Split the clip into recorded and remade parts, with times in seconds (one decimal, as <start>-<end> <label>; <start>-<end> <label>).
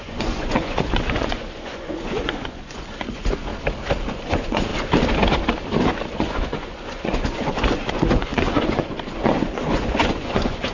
0.0-3.5 remade; 3.5-4.1 recorded; 4.1-4.7 remade; 4.7-6.2 recorded; 6.2-10.7 remade